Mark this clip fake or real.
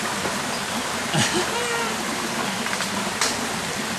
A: real